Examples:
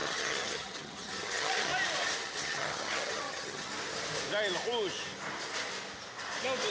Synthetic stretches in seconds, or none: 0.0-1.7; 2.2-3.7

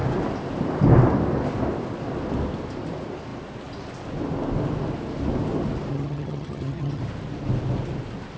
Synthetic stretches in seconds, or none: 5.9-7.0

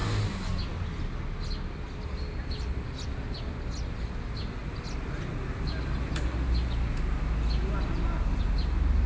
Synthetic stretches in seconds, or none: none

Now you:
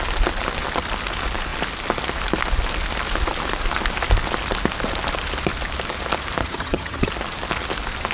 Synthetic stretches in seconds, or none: 6.4-7.1